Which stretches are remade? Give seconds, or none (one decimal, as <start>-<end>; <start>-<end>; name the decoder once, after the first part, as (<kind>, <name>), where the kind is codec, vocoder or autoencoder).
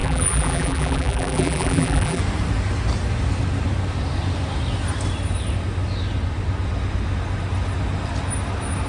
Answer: 0.0-2.2 (vocoder, BigVGAN v2)